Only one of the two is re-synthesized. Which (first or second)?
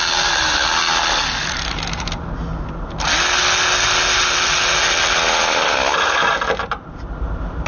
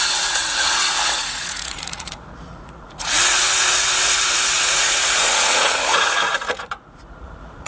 second